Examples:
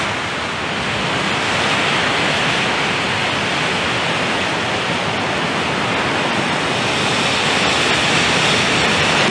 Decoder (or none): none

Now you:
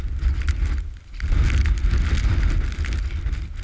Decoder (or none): none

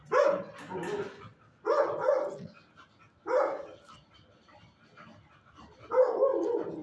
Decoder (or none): none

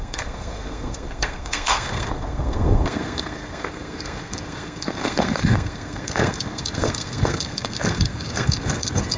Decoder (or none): codec, SNAC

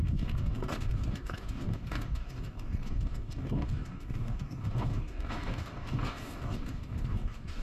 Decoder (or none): codec, DAC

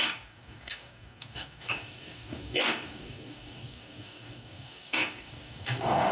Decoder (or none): codec, DAC